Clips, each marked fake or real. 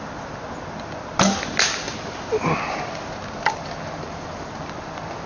real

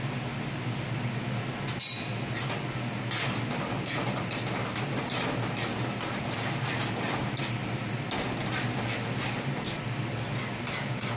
real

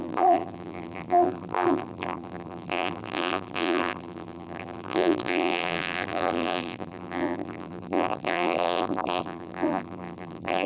fake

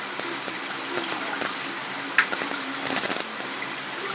fake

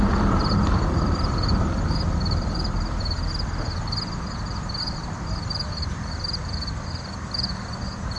fake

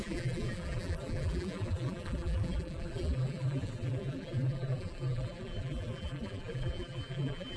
fake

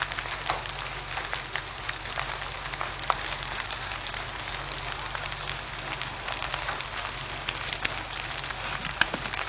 real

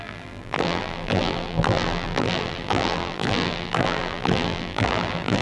fake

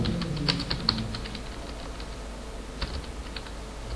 real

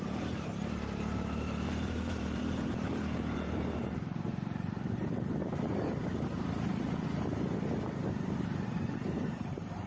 fake